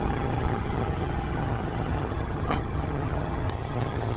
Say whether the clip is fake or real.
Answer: fake